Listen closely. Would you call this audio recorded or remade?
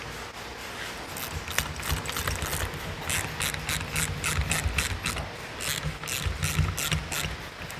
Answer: recorded